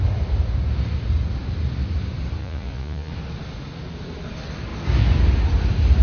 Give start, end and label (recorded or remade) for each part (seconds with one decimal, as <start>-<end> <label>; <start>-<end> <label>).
0.0-2.4 recorded; 2.4-3.1 remade; 3.1-6.0 recorded